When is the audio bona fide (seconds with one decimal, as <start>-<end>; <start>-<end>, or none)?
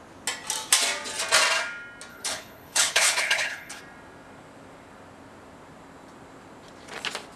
0.0-2.1; 3.8-7.4